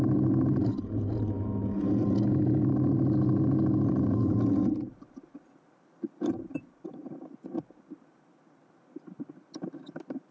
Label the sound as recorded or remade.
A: recorded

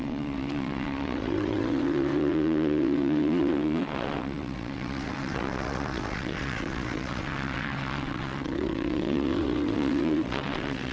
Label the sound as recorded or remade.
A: remade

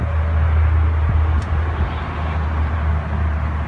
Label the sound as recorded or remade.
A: recorded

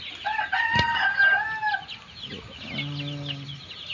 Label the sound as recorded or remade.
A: recorded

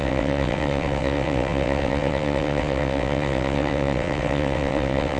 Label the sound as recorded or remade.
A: remade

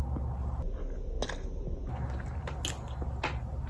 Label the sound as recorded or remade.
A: recorded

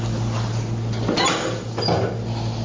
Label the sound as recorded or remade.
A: recorded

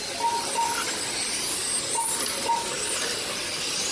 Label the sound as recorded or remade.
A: recorded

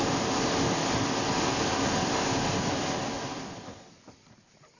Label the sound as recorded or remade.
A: recorded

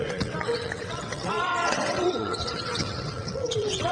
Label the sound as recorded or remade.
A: remade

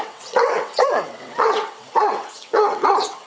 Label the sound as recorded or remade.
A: remade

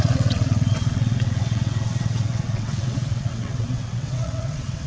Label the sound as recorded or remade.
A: remade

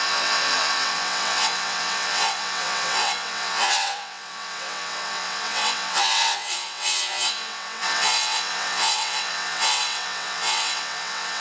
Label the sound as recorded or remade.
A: remade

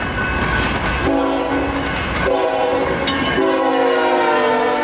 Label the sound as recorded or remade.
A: recorded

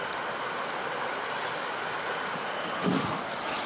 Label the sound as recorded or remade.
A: recorded